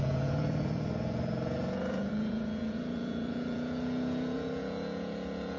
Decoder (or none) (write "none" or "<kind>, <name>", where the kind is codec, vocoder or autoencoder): vocoder, Vocos